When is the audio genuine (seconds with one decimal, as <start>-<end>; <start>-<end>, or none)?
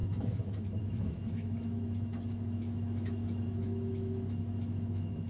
none